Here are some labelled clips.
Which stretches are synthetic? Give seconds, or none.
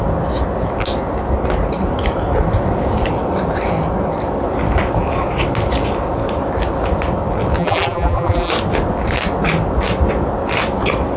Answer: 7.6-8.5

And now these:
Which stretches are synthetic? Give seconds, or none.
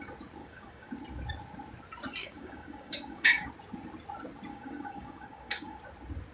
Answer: 0.4-0.9; 2.2-3.5; 4.5-5.8